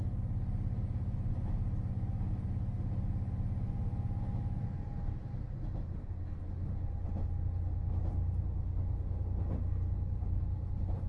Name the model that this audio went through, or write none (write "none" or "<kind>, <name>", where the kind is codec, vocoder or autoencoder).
none